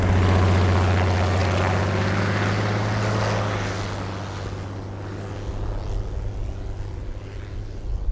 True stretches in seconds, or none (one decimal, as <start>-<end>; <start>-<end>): 0.0-8.1